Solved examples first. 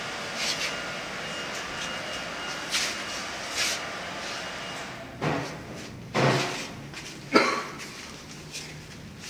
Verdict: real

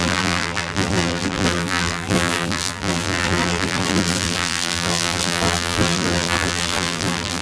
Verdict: fake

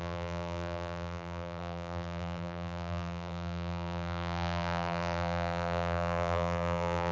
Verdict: fake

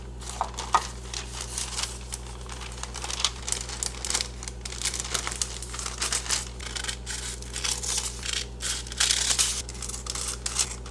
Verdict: real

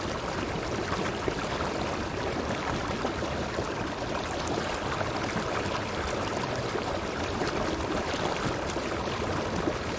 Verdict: fake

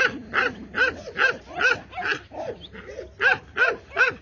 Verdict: real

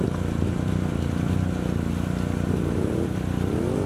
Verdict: real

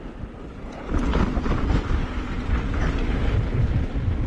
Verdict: real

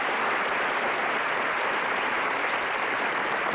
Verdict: fake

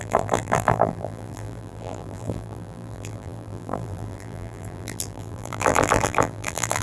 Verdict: fake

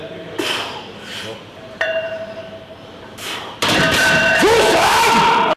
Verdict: fake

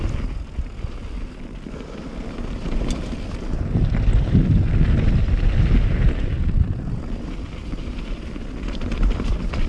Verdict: fake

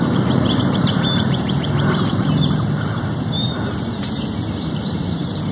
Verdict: fake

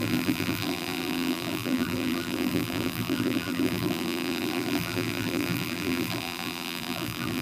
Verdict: fake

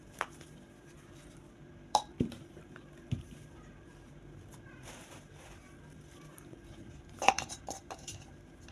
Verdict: fake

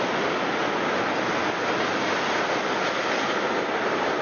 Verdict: real